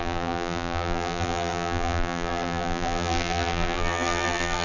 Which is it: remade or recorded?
remade